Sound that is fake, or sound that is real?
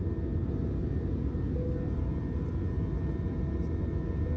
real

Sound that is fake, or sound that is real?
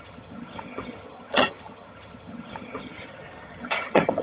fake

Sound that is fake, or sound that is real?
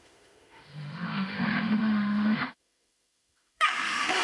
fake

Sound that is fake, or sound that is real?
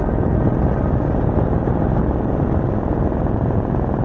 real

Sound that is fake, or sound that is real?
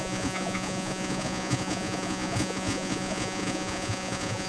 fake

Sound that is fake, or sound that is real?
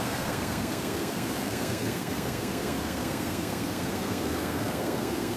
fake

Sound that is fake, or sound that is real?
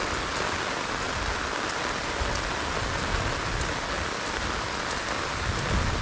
real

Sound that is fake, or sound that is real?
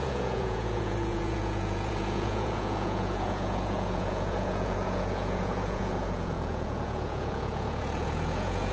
fake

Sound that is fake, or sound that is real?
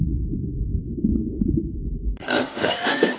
fake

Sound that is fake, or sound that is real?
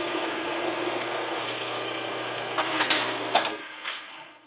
fake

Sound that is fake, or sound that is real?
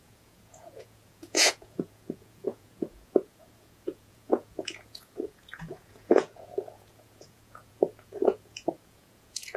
fake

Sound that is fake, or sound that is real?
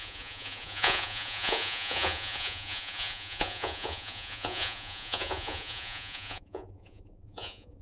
fake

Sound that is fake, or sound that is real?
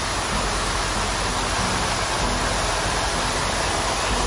real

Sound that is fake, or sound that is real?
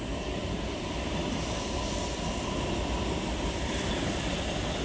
real